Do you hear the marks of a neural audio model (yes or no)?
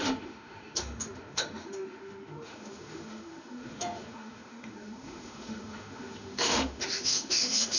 yes